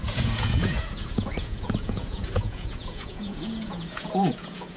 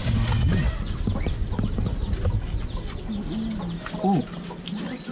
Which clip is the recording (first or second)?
second